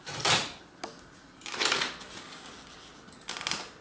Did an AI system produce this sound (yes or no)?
no